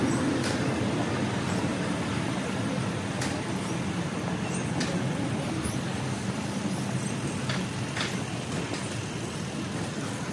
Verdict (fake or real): real